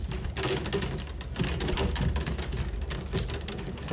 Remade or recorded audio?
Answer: recorded